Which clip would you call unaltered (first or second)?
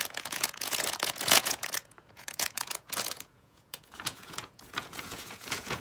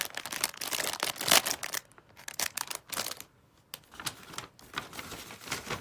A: second